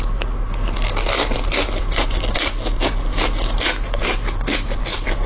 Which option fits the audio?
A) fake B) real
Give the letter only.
B